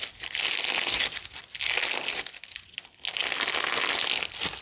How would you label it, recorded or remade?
recorded